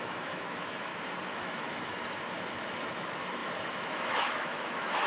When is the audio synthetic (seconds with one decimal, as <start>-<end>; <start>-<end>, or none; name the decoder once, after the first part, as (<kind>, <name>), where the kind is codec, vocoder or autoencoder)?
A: 0.0-0.9 (autoencoder, DAC-VAE); 1.4-2.0; 2.5-5.1